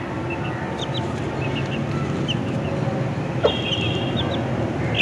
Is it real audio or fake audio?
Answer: real